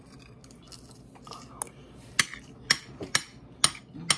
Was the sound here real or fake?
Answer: real